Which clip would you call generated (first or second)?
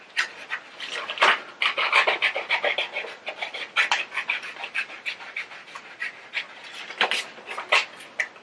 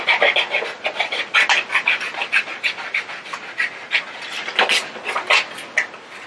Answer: first